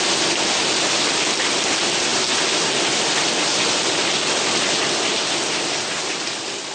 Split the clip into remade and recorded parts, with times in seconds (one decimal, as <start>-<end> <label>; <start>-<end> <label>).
0.0-6.7 recorded